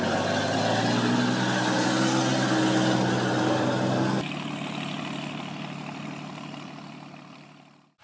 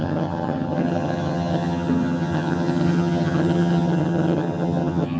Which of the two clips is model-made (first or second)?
second